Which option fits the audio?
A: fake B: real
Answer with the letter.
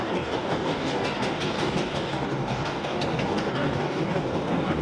A